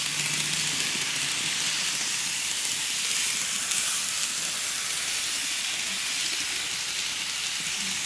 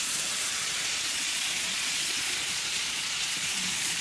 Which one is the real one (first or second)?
first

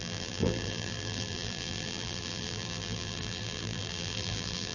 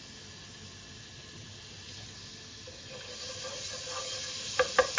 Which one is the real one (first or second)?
second